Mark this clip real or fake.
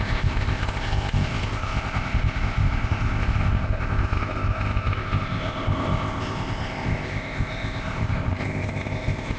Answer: fake